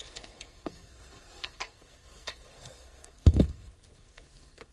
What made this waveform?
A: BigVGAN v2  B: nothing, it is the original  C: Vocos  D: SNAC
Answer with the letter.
D